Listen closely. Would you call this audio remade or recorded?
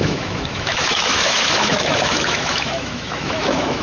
remade